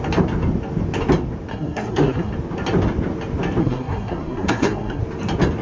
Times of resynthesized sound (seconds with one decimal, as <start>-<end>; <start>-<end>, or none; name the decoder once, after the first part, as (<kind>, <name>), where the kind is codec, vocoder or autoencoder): 1.5-2.3 (codec, SNAC); 3.6-5.0